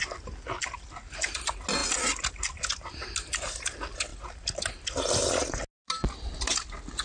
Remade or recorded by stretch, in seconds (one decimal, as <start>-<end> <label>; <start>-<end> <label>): 0.0-7.0 recorded